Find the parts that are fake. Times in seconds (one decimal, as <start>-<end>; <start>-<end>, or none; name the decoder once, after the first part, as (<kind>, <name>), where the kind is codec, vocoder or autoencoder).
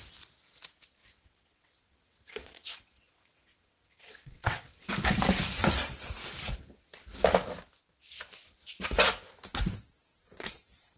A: 1.0-4.9 (vocoder, WaveNeXt); 10.1-11.0